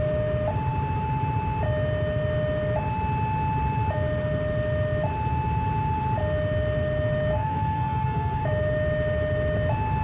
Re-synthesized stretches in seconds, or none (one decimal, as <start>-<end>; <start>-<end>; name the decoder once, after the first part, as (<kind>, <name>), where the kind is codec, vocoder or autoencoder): 7.3-8.4 (codec, SNAC)